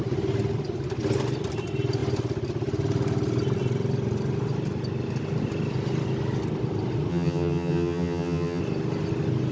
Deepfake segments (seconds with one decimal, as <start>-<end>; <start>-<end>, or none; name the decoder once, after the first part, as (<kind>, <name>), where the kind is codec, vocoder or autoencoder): 7.1-8.6 (vocoder, HiFi-GAN)